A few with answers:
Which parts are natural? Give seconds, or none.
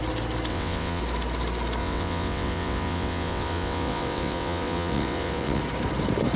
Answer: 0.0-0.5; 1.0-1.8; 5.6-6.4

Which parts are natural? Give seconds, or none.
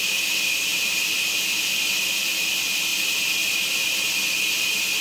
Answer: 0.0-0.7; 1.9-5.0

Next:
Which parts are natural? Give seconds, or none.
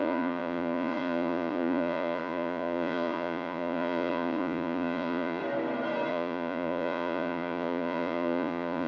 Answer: 5.4-6.1